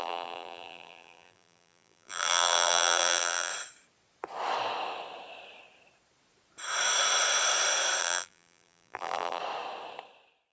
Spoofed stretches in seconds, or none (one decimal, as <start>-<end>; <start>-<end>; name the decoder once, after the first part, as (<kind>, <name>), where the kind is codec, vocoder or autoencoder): 0.0-3.5 (vocoder, BigVGAN v2); 8.0-9.4